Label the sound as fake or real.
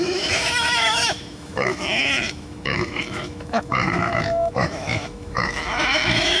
fake